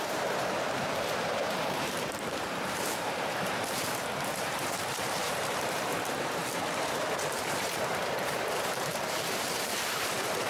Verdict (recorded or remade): remade